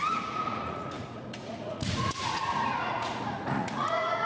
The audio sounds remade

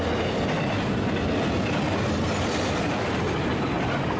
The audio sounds recorded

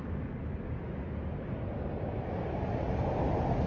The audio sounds recorded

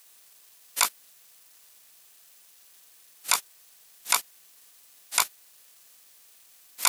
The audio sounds recorded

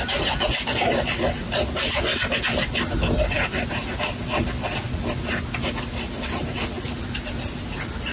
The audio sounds recorded